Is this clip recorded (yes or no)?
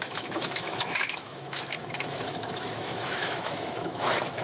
no